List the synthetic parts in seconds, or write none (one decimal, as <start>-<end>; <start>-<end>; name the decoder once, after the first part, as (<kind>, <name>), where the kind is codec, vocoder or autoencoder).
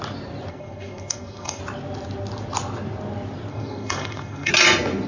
0.5-1.6 (codec, SNAC); 3.5-4.5